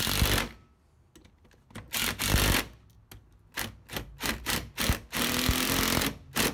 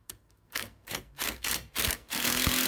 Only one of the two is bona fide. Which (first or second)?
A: first